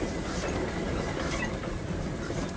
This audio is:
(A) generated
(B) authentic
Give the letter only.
A